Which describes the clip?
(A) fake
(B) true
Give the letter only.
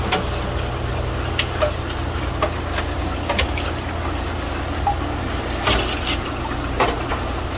B